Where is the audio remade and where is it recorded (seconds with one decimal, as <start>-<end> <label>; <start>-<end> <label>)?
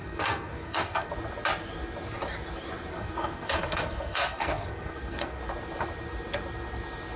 0.0-1.1 remade; 1.1-2.9 recorded; 2.9-5.4 remade; 5.4-7.2 recorded